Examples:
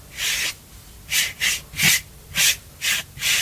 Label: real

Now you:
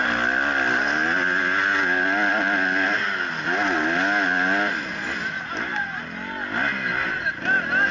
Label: real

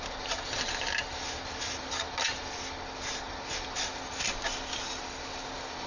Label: real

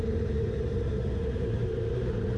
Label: fake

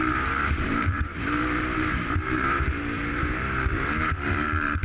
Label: fake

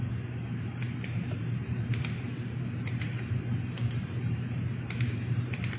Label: fake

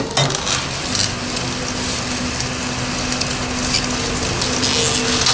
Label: real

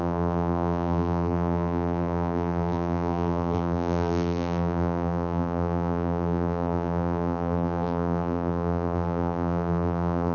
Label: fake